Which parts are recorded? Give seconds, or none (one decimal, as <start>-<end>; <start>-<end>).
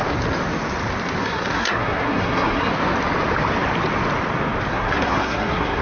0.0-1.2; 2.7-4.7